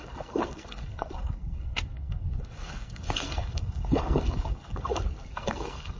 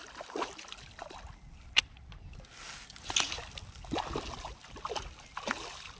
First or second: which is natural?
second